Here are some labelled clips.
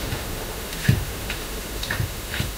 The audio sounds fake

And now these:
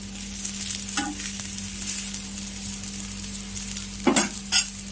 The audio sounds real